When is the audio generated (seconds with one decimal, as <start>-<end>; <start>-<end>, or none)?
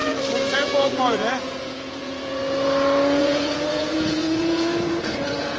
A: 0.5-2.4; 3.2-5.6